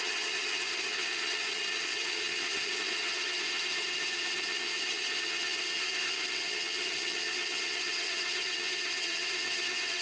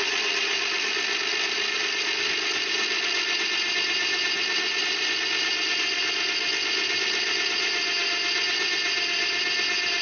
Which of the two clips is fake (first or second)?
first